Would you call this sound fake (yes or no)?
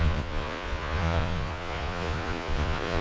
yes